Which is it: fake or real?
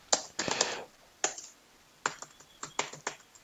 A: real